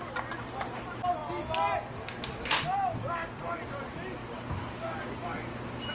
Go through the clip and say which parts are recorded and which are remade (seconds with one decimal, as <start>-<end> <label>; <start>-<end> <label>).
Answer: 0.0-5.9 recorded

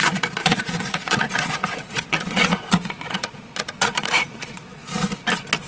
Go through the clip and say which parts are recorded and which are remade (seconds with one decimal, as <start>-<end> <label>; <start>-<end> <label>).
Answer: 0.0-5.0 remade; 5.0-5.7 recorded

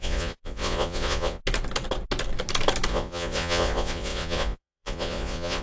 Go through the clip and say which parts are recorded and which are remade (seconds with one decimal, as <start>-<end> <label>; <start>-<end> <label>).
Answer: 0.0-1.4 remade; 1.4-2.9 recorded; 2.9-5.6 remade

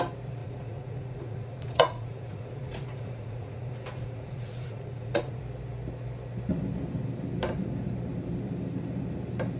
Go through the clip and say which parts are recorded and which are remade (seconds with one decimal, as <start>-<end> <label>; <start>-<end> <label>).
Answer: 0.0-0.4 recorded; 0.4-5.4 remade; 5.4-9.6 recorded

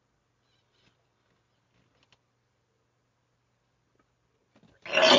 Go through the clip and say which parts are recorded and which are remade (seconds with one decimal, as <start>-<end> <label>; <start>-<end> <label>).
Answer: 0.0-5.2 recorded

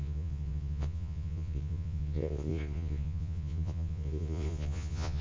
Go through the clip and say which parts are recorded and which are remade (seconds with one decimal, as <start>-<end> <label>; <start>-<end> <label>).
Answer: 0.0-5.2 remade